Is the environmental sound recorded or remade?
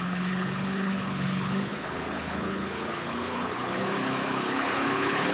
remade